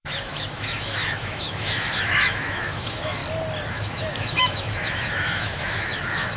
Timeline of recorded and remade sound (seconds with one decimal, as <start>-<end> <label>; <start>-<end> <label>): 0.0-3.2 remade; 3.2-3.7 recorded; 3.7-6.4 remade